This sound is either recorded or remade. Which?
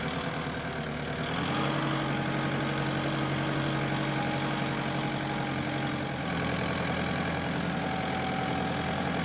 recorded